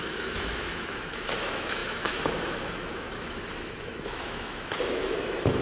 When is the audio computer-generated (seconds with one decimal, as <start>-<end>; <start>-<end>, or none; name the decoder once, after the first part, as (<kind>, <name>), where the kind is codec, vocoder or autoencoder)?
0.0-5.6 (autoencoder, DAC-VAE)